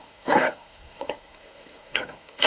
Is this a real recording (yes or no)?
no